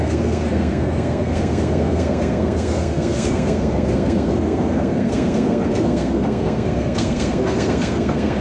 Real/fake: fake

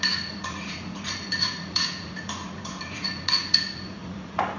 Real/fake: fake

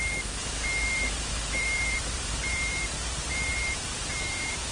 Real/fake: fake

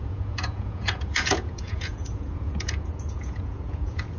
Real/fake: fake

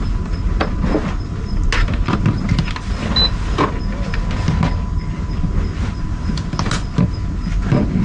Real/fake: real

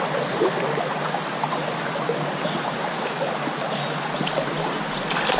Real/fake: real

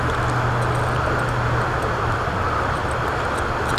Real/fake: real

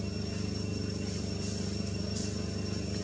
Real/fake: real